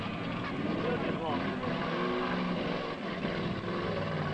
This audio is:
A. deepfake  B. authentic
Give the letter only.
B